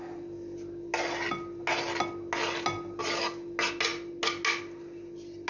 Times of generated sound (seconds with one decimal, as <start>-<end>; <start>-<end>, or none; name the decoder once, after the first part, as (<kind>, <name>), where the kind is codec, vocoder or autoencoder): none